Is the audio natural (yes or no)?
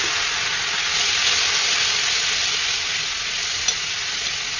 yes